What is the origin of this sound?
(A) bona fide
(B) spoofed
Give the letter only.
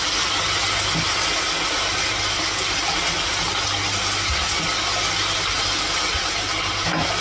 A